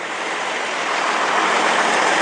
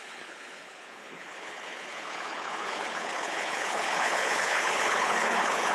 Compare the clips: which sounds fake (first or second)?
second